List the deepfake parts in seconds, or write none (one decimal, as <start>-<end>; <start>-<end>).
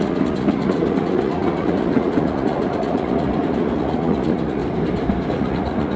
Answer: 0.0-4.6; 5.3-6.0